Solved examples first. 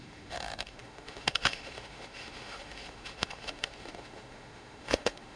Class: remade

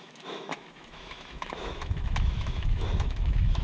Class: remade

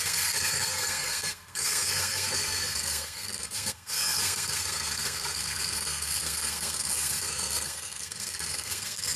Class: remade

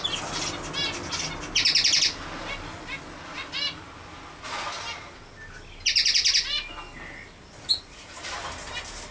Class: recorded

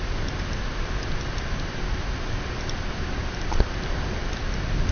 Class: recorded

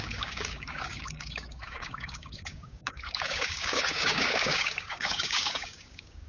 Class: remade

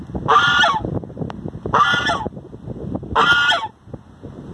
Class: recorded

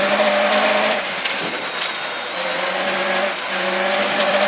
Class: remade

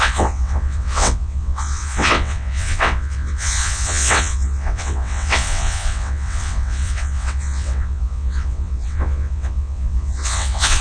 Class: remade